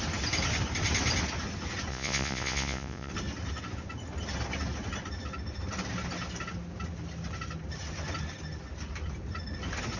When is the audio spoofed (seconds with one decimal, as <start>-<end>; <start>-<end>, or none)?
1.9-3.1